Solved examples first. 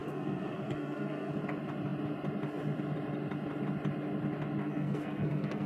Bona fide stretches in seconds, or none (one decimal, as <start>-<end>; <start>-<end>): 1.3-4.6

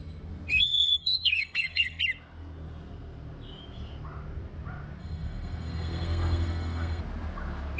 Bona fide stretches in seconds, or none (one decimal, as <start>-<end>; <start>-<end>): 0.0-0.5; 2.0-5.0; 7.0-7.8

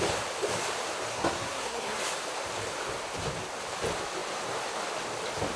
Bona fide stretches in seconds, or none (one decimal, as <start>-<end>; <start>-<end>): 0.0-1.1; 2.0-5.6

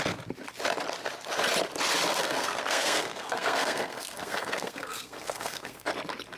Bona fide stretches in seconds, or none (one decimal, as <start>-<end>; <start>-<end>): 0.0-2.1; 5.9-6.4